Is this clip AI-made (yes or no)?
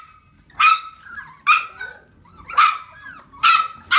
no